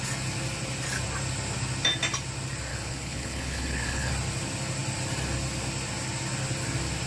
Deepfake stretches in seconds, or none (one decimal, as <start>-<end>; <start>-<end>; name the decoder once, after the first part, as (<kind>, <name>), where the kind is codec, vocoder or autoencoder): 2.7-4.1 (codec, HILCodec)